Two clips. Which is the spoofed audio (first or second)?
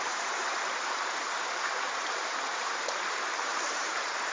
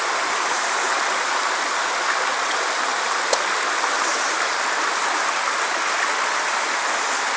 first